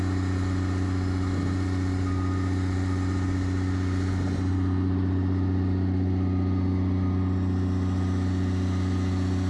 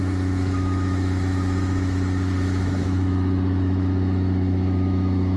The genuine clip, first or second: first